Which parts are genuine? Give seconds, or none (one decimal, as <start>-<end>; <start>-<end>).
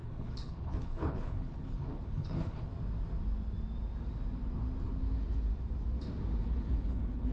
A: 2.7-6.4